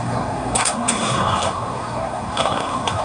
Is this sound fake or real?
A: fake